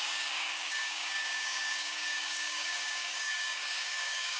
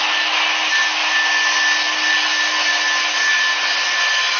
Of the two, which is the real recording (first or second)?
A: second